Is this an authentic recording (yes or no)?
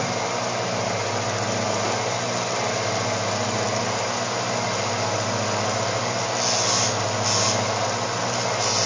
no